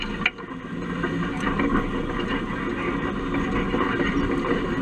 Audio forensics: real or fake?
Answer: real